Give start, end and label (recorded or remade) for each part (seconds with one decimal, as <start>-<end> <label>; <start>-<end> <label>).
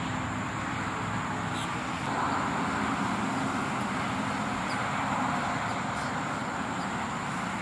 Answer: 0.0-6.4 recorded; 6.4-7.1 remade; 7.1-7.6 recorded